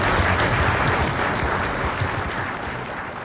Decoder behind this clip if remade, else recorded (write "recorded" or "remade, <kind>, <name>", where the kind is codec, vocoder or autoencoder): recorded